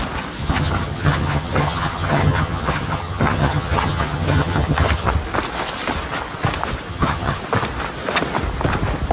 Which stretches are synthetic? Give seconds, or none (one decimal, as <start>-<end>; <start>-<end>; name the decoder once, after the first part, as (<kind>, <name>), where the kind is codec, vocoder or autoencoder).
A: 0.4-5.1 (vocoder, HiFi-GAN); 6.9-7.4